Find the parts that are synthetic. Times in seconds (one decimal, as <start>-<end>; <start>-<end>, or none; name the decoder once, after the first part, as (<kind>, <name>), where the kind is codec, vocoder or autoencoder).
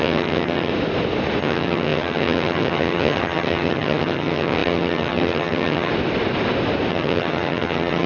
0.0-0.7 (vocoder, HiFi-GAN); 1.4-5.9; 6.9-8.1